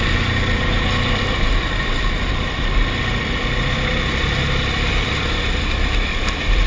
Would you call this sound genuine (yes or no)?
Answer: no